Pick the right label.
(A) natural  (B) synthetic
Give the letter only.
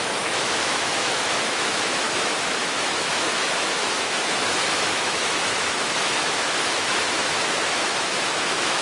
B